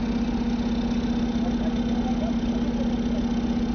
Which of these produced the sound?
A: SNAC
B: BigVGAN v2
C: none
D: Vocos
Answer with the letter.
C